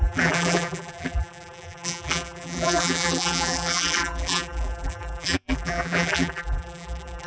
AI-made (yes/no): yes